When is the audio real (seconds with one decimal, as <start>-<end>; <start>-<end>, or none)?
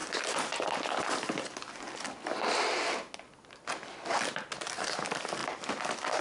0.0-6.2